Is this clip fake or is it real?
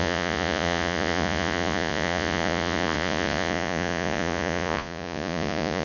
fake